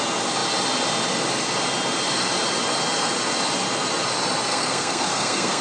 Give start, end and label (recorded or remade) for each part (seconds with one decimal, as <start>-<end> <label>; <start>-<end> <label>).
0.0-4.5 recorded; 4.5-5.6 remade